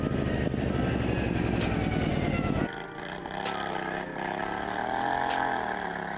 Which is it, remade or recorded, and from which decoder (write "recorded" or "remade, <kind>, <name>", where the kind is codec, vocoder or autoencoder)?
recorded